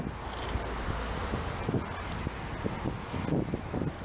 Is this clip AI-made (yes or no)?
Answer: no